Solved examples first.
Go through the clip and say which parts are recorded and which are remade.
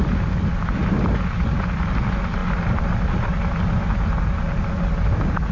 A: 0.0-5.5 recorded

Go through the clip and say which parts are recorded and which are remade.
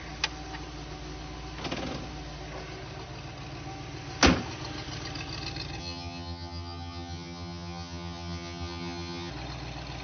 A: 0.0-5.8 recorded; 5.8-9.3 remade; 9.3-10.0 recorded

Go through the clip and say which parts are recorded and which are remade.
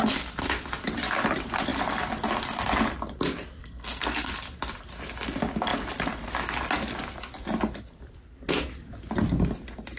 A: 0.0-3.6 recorded; 3.6-4.3 remade; 4.3-10.0 recorded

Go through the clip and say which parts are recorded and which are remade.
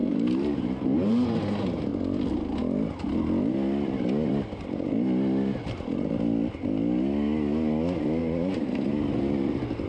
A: 0.0-1.4 remade; 1.4-8.2 recorded; 8.2-8.7 remade; 8.7-9.9 recorded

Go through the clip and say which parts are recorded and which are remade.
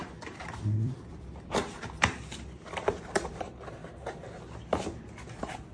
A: 0.0-3.4 remade; 3.4-5.7 recorded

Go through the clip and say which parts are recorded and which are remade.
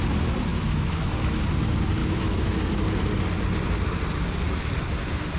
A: 0.0-0.5 recorded; 0.5-1.1 remade; 1.1-2.0 recorded; 2.0-2.6 remade; 2.6-5.4 recorded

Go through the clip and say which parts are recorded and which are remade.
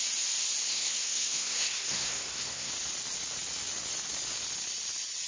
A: 0.0-0.6 recorded; 0.6-2.7 remade; 2.7-5.3 recorded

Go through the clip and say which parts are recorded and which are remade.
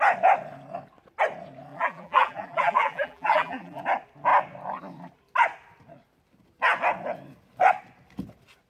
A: 0.0-1.7 recorded; 1.7-3.8 remade; 3.8-8.7 recorded